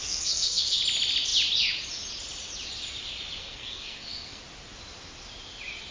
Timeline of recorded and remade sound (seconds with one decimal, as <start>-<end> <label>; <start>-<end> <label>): 0.0-0.8 remade; 0.8-3.4 recorded; 3.4-4.4 remade; 4.4-5.9 recorded